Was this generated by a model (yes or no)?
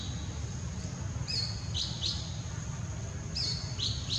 no